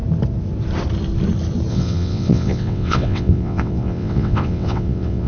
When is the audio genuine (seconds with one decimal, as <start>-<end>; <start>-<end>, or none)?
0.0-1.7